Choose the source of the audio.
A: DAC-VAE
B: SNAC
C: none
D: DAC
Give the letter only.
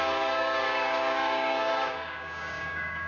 D